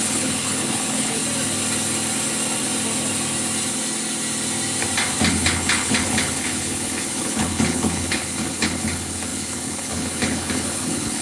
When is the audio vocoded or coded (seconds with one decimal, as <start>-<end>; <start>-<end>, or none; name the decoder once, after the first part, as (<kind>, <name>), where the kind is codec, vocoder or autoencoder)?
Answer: 0.0-1.2 (codec, HILCodec); 5.3-11.2